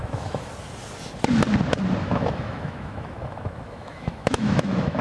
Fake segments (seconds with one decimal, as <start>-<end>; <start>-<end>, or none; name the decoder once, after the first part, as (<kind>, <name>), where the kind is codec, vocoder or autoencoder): 0.0-0.5 (autoencoder, DAC-VAE); 2.0-5.0